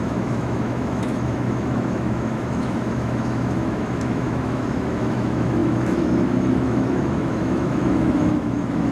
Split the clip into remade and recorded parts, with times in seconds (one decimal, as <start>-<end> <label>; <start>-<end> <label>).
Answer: 0.0-8.9 remade